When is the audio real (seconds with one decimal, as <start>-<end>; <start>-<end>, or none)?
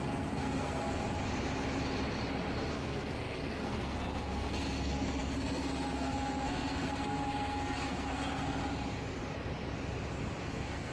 1.0-2.7; 8.6-10.4